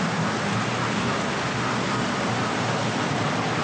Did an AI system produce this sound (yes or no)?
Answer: no